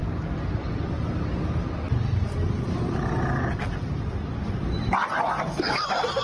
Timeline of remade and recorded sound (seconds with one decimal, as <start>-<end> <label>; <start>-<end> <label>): 0.0-6.2 recorded